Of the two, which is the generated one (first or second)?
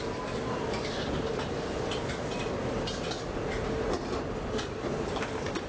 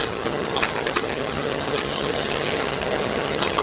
second